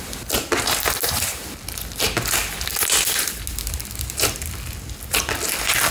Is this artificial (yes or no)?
no